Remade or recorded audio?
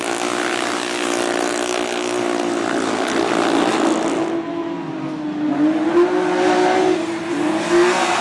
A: recorded